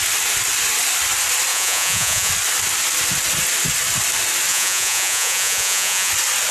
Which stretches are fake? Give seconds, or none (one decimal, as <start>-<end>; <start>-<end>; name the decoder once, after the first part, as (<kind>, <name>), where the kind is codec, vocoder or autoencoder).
1.5-2.3 (vocoder, Vocos); 4.5-6.1

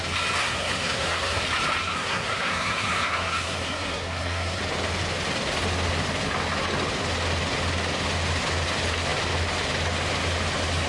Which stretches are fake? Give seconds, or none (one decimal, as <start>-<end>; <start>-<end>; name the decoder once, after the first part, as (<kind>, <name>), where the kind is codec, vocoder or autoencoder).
0.4-1.4 (codec, SNAC); 1.8-4.6

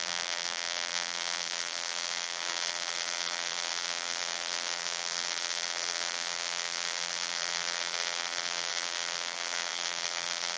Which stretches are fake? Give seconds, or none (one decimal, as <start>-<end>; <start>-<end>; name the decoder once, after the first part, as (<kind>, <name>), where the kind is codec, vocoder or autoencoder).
0.0-10.6 (vocoder, BigVGAN v2)

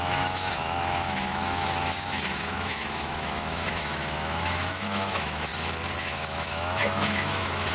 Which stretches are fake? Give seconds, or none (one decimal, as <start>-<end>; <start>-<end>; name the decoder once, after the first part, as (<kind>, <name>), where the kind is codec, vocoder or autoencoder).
0.0-5.5 (autoencoder, DAC-VAE); 6.0-7.7

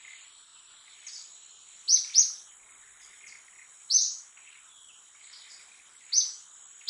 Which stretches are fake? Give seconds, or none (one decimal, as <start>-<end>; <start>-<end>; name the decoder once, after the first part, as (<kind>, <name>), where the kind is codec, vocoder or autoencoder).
none

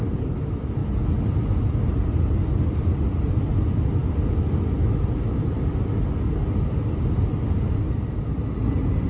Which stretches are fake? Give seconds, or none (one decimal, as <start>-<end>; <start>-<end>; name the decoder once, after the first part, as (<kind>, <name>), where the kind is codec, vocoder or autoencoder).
none